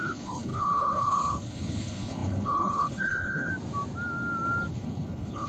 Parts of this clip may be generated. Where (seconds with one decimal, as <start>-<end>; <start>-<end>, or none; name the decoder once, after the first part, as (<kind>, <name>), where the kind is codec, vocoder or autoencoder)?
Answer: 0.0-3.5 (codec, HILCodec); 4.7-5.5